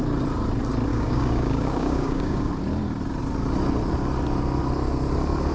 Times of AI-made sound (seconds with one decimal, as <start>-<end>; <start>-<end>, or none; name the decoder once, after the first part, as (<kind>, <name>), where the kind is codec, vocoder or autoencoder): 0.9-2.5 (codec, DAC)